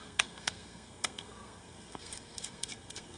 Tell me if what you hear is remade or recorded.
remade